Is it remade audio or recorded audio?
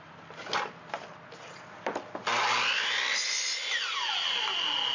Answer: recorded